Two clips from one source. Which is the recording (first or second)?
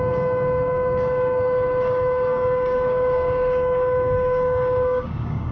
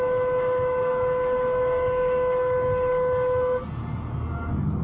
second